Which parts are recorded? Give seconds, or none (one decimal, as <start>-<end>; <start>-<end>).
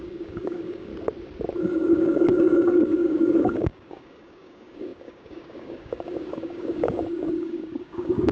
0.9-1.6